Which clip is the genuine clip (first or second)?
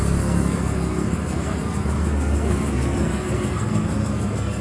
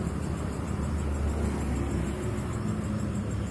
second